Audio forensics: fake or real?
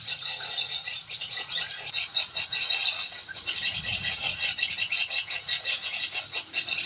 fake